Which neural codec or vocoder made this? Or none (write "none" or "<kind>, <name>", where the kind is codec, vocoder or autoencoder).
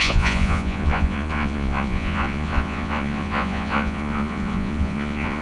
vocoder, Vocos